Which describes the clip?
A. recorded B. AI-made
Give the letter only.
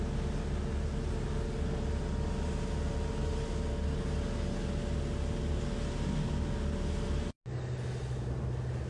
A